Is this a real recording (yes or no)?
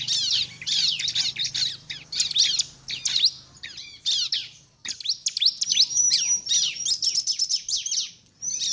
yes